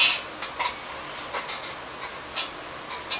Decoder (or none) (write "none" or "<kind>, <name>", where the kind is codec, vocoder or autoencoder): none